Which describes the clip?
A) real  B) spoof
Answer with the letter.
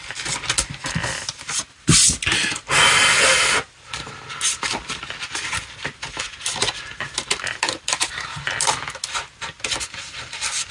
A